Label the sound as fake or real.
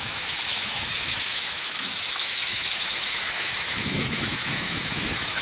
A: fake